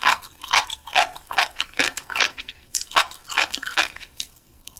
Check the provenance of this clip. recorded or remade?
remade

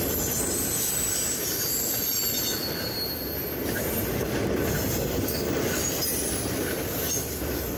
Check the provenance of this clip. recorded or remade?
recorded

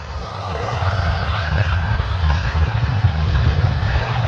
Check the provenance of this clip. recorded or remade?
remade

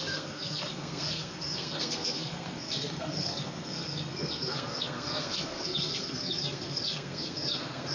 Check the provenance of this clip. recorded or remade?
remade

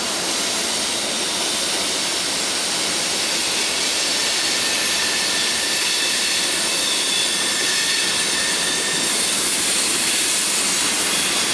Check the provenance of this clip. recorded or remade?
recorded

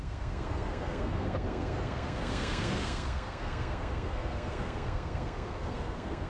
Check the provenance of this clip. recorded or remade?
remade